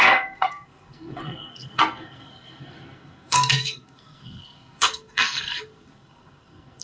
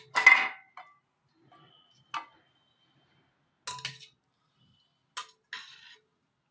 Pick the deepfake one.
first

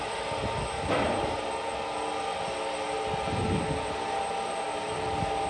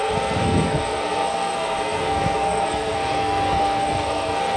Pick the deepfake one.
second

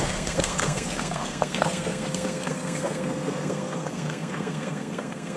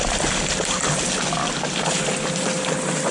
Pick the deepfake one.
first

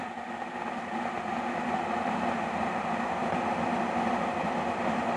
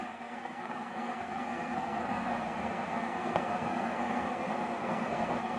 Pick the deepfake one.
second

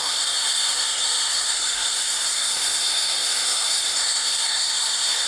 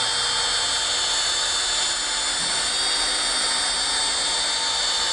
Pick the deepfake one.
first